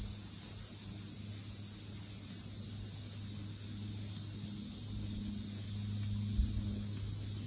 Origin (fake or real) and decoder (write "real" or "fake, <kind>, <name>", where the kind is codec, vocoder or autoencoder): real